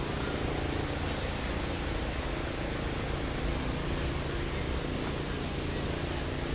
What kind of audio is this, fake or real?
real